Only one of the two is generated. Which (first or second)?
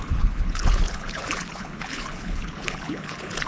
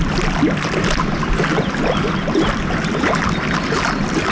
first